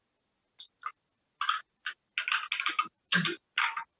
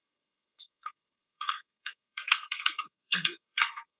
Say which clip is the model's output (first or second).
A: second